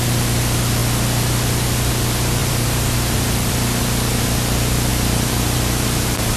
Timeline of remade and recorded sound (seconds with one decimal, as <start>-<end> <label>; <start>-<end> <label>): 0.0-2.4 recorded; 2.4-3.5 remade; 3.5-4.9 recorded; 4.9-6.4 remade